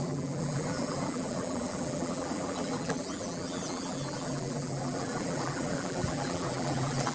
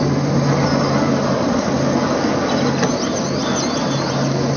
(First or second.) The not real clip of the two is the first